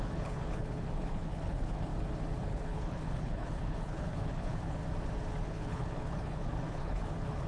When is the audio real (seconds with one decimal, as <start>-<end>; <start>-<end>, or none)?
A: 1.9-2.4; 4.8-5.4